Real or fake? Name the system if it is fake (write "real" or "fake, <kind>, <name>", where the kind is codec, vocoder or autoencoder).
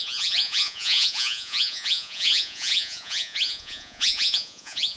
fake, vocoder, Vocos